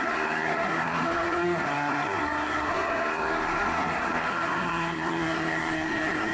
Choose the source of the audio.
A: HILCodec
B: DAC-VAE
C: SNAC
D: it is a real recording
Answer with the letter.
C